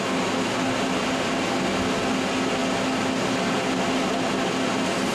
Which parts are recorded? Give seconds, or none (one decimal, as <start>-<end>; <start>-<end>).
0.0-5.1